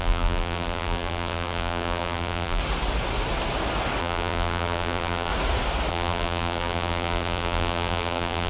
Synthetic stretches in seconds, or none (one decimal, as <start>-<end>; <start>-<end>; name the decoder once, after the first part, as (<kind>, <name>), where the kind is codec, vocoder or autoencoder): 0.0-2.6 (vocoder, BigVGAN v2); 4.0-5.3; 5.9-8.5